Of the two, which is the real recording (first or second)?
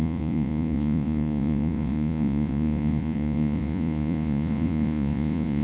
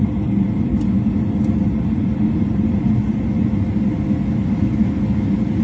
second